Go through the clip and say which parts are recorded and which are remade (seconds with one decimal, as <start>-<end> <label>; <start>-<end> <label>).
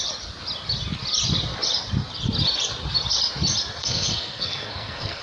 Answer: 0.0-3.8 recorded; 3.8-5.2 remade